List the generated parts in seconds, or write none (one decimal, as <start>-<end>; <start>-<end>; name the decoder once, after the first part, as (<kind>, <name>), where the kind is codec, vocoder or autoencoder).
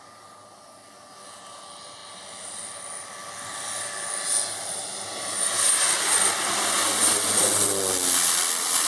none